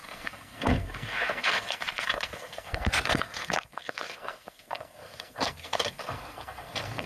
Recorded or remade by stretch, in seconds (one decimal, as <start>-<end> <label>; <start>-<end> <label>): 0.0-7.1 remade